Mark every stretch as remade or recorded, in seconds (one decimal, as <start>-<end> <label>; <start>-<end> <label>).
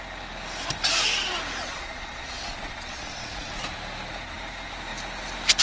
0.0-1.7 recorded; 1.7-3.5 remade; 3.5-5.6 recorded